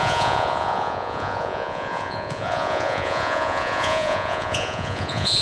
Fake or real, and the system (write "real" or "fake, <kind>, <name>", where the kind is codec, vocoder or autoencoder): fake, vocoder, Vocos